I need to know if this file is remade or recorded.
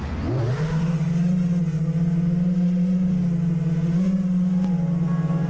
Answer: recorded